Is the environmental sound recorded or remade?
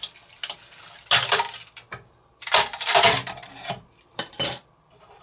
recorded